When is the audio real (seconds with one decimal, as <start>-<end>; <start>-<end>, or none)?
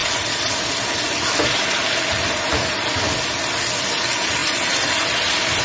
3.2-5.6